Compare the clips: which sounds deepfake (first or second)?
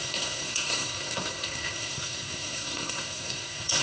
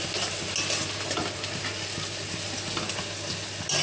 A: first